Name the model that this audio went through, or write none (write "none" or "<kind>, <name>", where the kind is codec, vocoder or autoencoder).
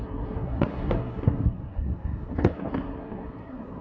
codec, SNAC